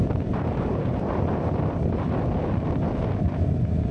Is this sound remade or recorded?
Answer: recorded